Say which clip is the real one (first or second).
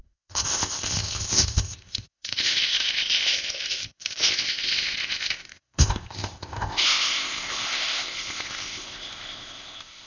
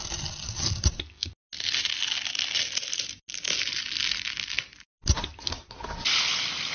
second